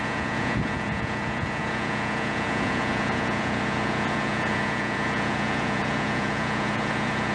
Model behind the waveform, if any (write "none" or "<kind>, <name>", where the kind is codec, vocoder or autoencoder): vocoder, Vocos